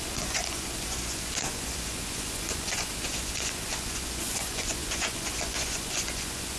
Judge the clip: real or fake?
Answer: fake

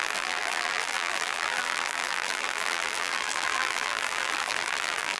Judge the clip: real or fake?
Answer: fake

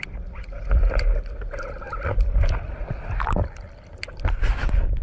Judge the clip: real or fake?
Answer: real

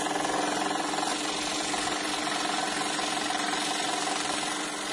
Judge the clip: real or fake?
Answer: real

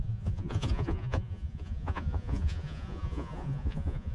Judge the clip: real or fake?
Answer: fake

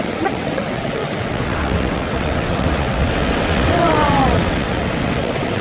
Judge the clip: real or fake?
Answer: fake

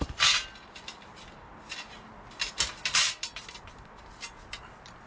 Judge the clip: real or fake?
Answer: real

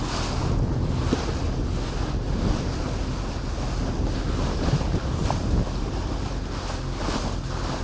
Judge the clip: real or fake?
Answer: real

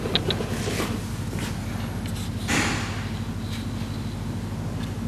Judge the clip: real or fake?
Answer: real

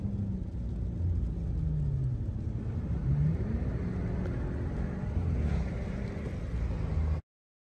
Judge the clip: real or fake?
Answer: real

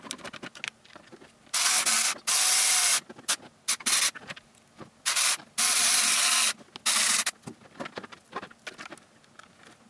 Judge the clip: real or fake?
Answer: real